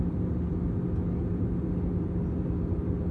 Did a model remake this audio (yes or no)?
no